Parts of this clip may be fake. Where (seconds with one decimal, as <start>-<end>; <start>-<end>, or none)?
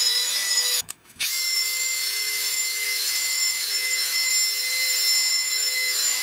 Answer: 0.0-4.3; 5.3-6.2